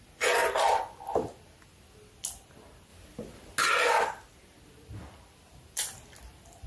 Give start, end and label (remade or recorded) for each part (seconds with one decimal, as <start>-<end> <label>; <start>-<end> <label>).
0.0-6.7 recorded